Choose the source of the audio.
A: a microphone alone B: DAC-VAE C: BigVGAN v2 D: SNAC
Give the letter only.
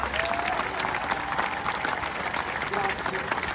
A